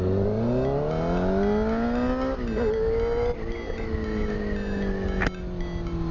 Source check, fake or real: real